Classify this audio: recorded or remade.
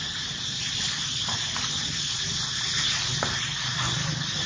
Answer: recorded